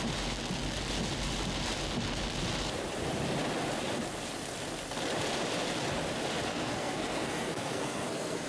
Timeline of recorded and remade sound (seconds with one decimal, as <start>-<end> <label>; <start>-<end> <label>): 0.0-6.5 recorded; 6.5-8.5 remade